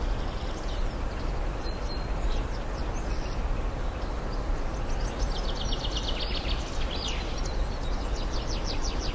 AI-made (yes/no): no